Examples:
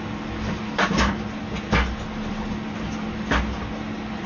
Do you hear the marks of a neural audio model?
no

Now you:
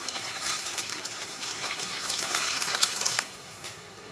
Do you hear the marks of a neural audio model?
yes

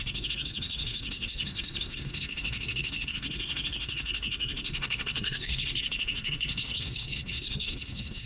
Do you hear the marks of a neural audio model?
yes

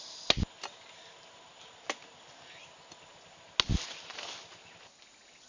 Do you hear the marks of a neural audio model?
no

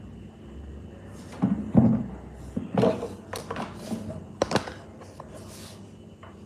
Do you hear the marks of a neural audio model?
no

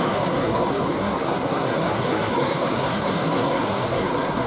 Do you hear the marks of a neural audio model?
yes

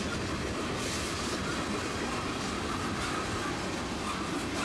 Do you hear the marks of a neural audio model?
no